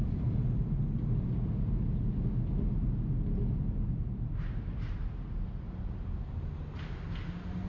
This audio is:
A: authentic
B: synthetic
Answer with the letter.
A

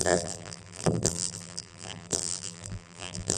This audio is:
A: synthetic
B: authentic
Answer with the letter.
A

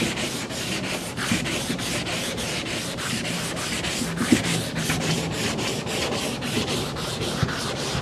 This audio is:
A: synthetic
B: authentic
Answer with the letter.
A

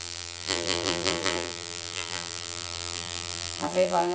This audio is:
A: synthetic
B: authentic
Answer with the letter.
A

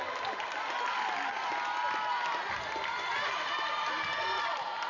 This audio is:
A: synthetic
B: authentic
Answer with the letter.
B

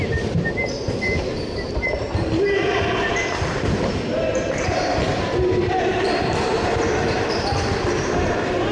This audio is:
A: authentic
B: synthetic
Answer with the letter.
B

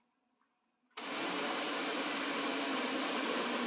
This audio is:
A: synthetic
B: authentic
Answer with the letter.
A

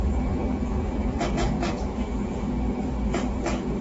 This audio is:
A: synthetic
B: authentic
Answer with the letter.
A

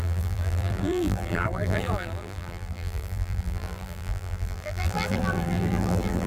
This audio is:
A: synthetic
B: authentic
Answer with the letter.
A